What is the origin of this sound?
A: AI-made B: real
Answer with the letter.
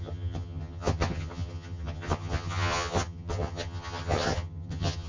A